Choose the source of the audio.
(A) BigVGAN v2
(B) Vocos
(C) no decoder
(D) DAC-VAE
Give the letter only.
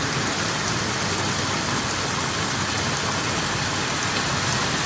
C